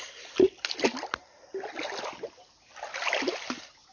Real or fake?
real